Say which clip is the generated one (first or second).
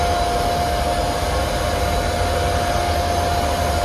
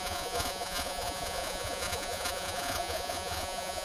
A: second